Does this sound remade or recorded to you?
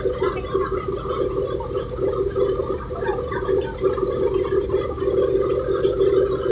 recorded